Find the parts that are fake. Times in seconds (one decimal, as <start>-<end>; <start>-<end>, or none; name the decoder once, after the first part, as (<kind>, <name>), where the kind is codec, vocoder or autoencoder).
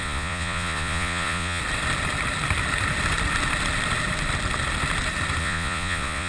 0.0-1.6 (vocoder, Vocos); 5.4-6.3